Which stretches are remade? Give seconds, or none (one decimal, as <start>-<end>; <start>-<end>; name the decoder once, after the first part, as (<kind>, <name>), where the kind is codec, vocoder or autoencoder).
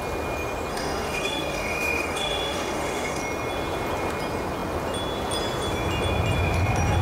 0.7-3.2 (autoencoder, DAC-VAE)